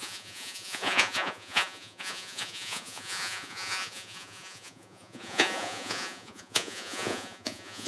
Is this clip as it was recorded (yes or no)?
no